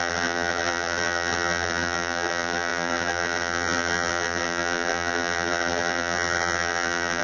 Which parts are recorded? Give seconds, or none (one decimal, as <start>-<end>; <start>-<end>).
none